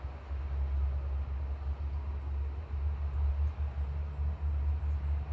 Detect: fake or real real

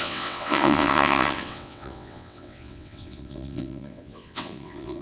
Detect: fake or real fake